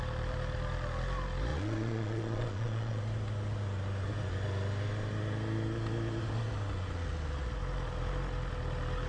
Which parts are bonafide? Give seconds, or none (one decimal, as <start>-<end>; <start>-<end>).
0.0-1.5; 3.0-9.1